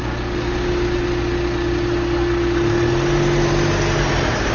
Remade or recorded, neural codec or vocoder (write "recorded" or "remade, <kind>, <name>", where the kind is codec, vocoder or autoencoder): recorded